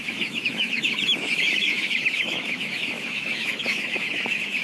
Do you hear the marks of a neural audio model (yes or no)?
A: yes